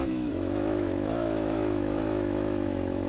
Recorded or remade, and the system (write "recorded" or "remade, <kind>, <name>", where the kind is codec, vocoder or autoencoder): remade, autoencoder, DAC-VAE